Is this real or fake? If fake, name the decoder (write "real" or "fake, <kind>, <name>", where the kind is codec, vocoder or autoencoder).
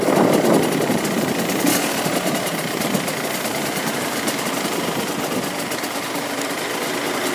real